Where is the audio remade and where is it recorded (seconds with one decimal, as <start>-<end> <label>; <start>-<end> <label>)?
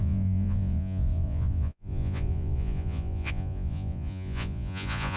0.0-5.2 remade